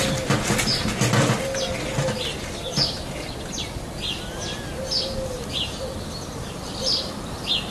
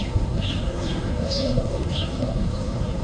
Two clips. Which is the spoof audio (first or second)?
second